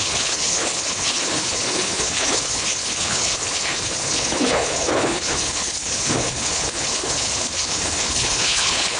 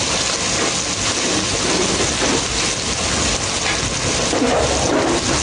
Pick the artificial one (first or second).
first